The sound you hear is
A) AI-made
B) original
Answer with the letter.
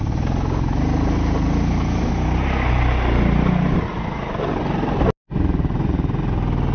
B